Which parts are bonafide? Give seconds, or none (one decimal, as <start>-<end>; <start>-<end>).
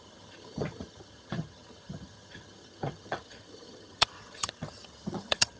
none